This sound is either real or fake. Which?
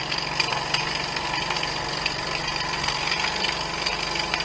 real